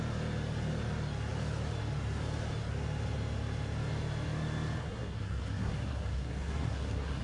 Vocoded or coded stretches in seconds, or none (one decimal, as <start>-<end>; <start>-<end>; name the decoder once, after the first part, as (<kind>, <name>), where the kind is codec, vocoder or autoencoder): 4.8-7.2 (codec, SNAC)

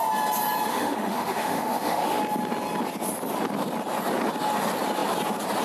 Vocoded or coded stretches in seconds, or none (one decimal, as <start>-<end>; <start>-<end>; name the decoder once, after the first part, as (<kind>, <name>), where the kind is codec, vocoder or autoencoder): 0.7-2.2 (autoencoder, DAC-VAE)

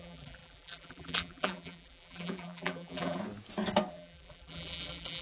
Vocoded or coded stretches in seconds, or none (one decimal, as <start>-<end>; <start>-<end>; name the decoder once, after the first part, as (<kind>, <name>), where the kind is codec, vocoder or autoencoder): 0.0-3.2 (vocoder, BigVGAN v2); 3.9-5.2

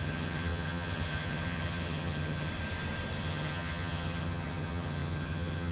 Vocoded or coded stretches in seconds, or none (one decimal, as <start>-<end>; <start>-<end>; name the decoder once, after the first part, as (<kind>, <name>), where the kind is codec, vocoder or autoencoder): 0.0-2.5 (vocoder, HiFi-GAN); 3.2-5.7

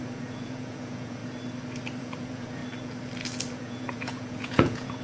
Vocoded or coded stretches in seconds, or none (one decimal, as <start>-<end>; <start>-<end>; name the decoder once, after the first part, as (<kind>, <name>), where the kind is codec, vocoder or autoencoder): 0.0-1.2 (vocoder, Vocos); 2.0-2.6; 3.5-5.0